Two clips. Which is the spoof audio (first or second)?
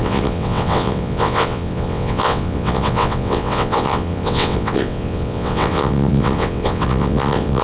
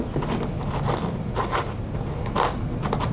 first